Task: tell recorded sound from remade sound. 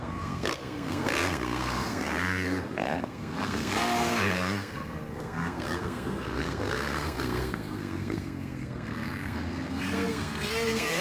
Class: remade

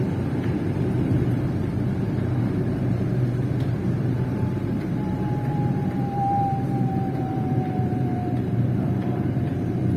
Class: remade